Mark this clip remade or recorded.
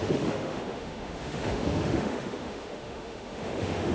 remade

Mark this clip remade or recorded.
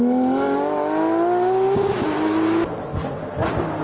recorded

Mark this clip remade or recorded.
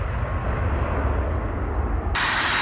recorded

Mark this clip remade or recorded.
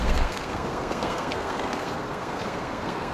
remade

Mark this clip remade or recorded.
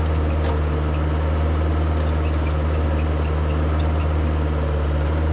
recorded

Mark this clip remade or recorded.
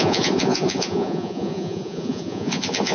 remade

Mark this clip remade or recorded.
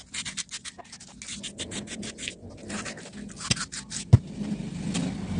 recorded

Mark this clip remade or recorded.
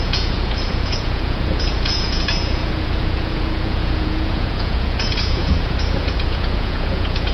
remade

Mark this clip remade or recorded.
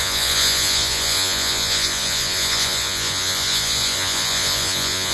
remade